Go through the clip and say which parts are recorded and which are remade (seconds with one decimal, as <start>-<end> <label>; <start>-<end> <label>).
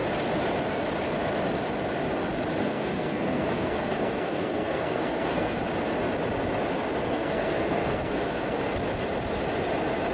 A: 0.0-2.6 recorded; 2.6-5.6 remade; 5.6-7.0 recorded; 7.0-8.6 remade; 8.6-10.1 recorded